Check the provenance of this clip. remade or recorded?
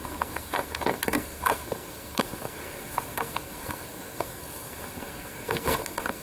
remade